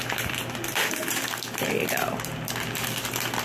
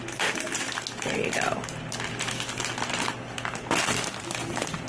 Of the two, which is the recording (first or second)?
second